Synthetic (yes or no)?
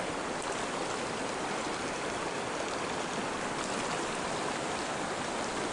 no